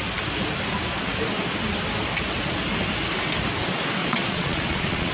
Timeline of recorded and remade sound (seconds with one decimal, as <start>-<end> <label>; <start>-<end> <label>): 0.0-4.0 recorded; 4.0-5.1 remade